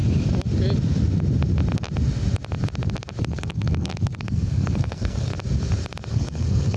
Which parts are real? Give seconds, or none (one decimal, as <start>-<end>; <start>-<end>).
0.0-3.2; 5.3-6.1